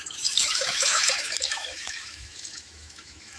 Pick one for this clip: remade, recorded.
remade